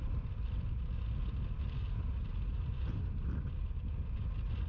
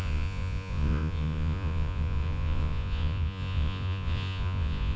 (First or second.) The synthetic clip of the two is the second